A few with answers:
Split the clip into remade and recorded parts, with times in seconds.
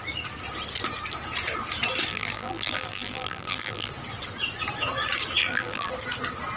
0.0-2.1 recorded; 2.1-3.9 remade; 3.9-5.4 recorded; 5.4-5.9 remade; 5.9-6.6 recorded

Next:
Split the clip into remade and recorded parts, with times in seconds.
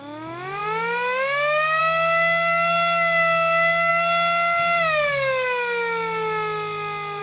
0.0-7.2 recorded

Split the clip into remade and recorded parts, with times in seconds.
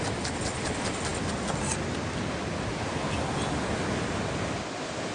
0.0-5.1 recorded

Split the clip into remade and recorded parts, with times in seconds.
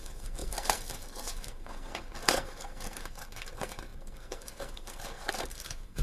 0.0-6.0 remade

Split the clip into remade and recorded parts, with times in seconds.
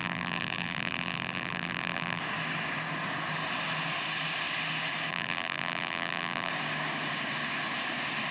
0.0-2.2 remade; 2.2-5.1 recorded; 5.1-6.5 remade; 6.5-8.3 recorded